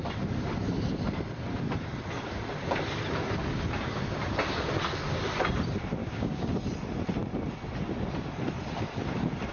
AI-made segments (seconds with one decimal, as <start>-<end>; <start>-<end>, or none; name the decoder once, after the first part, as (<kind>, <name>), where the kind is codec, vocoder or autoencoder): 6.0-6.5 (codec, DAC)